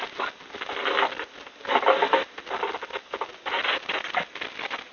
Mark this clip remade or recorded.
recorded